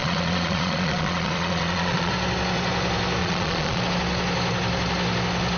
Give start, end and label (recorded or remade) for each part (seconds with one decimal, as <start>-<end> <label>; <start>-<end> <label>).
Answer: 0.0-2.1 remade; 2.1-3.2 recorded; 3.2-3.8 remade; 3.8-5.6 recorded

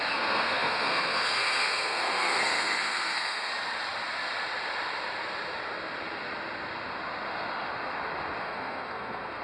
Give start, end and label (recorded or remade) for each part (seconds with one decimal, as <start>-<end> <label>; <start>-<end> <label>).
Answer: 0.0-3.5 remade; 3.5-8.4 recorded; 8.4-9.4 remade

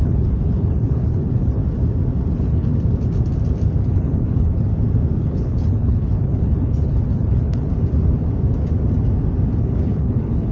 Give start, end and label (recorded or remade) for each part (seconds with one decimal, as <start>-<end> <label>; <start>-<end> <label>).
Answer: 0.0-1.6 remade; 1.6-2.3 recorded; 2.3-2.7 remade; 2.7-3.8 recorded; 3.8-4.7 remade; 4.7-5.2 recorded; 5.2-7.7 remade; 7.7-9.6 recorded; 9.6-10.5 remade

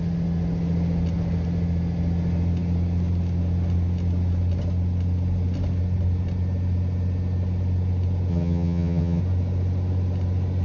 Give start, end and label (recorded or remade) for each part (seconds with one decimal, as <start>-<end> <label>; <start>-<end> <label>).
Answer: 0.0-8.3 recorded; 8.3-9.2 remade; 9.2-10.6 recorded